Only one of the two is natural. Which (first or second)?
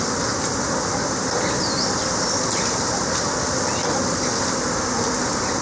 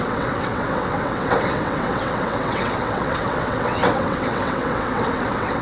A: first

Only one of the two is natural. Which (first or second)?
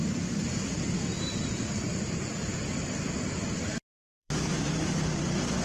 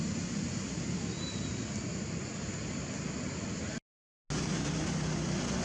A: second